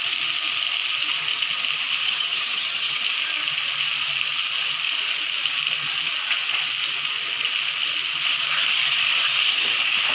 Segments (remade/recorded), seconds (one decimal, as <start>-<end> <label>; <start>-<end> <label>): 0.0-2.0 recorded; 2.0-3.0 remade; 3.0-10.1 recorded